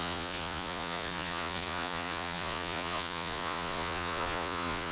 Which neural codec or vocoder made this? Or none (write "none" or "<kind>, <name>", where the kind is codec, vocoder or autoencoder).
vocoder, Vocos